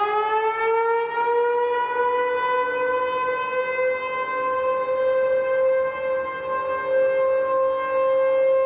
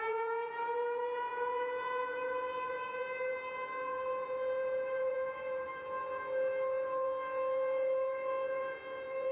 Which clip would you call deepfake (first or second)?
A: second